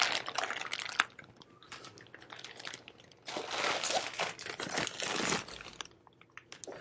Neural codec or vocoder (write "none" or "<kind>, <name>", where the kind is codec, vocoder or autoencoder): none